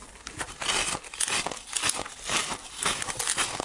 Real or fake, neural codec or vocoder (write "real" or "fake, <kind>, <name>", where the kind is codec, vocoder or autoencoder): real